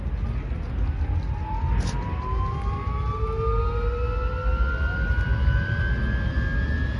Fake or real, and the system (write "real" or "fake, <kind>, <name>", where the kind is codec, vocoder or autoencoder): real